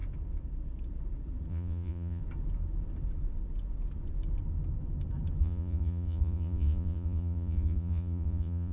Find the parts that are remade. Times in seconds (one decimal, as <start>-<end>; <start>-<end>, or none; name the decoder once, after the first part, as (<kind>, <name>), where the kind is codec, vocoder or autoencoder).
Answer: 1.5-2.2 (vocoder, Vocos); 5.4-8.7